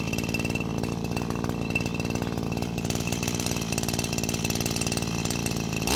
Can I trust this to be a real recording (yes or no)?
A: yes